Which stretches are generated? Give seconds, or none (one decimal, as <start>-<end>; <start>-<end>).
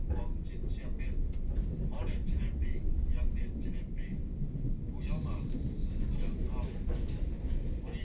none